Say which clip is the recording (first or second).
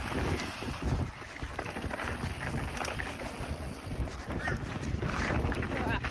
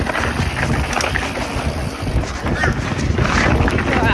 second